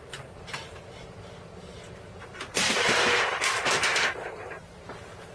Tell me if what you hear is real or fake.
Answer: fake